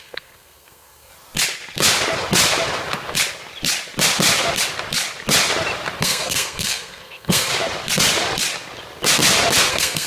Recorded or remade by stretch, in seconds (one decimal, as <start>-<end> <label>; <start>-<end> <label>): 0.0-1.1 remade; 1.1-6.0 recorded; 6.0-7.5 remade; 7.5-9.7 recorded; 9.7-10.1 remade